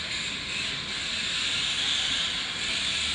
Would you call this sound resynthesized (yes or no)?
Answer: no